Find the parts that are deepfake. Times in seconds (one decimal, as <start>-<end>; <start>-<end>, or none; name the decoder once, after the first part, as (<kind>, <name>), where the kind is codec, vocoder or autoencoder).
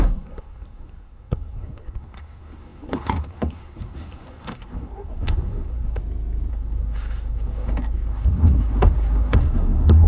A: 0.0-6.0 (codec, SNAC); 6.5-10.1